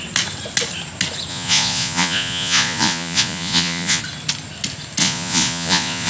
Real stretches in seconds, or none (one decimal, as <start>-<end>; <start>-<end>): 0.0-1.3; 4.0-5.0